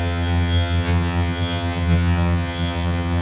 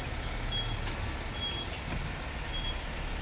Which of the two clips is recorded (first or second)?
second